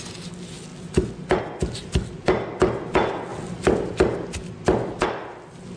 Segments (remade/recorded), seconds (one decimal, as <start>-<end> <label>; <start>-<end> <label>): 0.0-5.8 recorded